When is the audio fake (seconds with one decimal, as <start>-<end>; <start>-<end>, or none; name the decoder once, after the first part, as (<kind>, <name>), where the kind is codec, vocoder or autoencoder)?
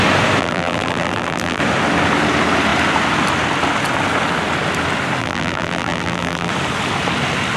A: 0.4-1.6 (vocoder, BigVGAN v2); 5.2-6.5